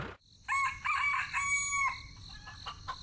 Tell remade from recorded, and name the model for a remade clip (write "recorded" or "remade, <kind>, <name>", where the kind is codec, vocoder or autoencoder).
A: recorded